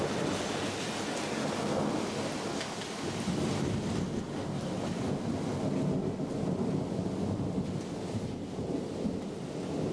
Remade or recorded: recorded